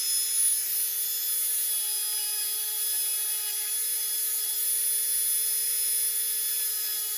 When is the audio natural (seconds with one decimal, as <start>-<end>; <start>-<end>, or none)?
0.0-7.2